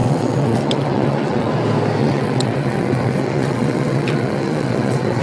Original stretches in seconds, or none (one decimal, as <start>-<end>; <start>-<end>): 1.5-2.0